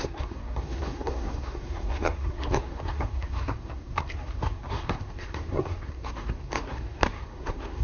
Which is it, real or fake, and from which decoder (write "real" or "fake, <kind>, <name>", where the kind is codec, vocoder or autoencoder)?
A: fake, codec, SNAC